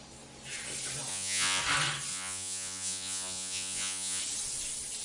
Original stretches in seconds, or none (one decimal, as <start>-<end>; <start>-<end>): 0.0-1.1; 1.6-2.1; 4.2-5.0